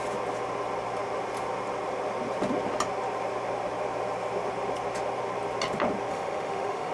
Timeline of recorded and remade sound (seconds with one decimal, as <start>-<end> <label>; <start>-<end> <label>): 0.0-6.1 recorded; 6.1-6.9 remade